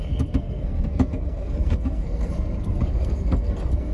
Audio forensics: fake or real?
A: fake